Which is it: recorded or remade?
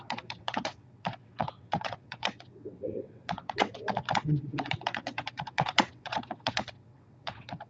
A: remade